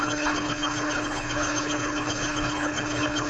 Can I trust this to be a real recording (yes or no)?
no